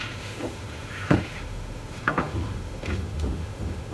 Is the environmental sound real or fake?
fake